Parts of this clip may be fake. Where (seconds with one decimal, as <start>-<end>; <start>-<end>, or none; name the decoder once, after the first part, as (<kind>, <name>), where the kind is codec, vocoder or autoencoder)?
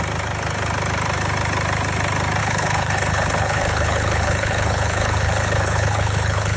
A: 2.4-6.6 (codec, HILCodec)